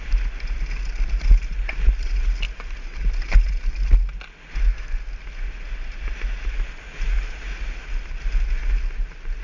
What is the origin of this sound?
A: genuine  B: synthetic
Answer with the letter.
A